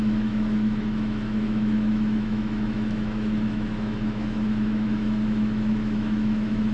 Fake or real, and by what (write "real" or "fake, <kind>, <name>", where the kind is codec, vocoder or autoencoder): fake, autoencoder, DAC-VAE